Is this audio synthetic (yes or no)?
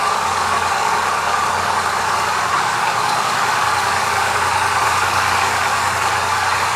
yes